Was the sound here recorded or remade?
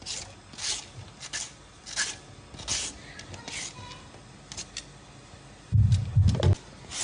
recorded